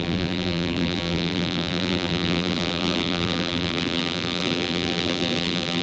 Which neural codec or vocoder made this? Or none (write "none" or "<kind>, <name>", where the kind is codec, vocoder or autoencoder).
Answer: vocoder, BigVGAN v2